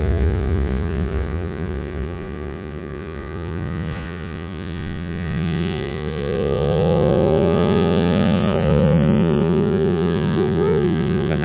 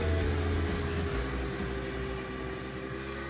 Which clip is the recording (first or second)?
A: second